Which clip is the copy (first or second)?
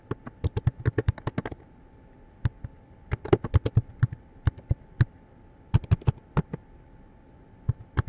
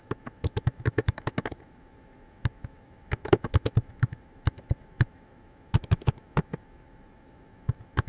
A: second